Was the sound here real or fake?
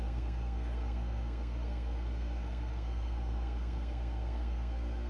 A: fake